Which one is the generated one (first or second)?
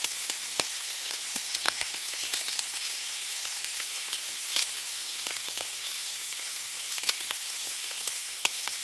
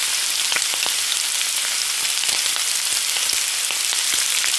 first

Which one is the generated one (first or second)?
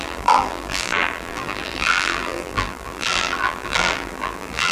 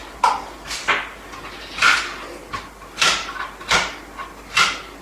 first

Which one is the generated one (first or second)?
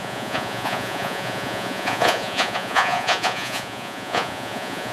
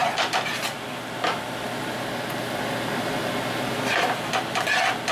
first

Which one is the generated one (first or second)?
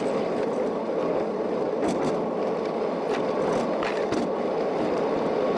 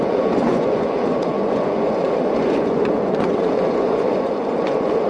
second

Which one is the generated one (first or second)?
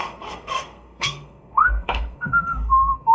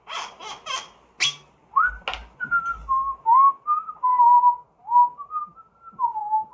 first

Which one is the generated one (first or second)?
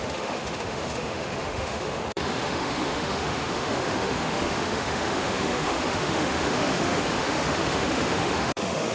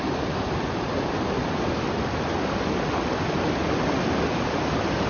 first